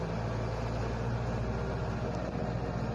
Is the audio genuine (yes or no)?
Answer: yes